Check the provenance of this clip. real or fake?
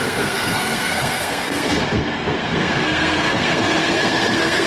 fake